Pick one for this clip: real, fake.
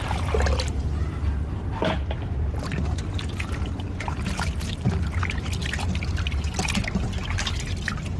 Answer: real